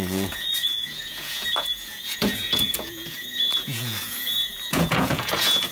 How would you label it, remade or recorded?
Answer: remade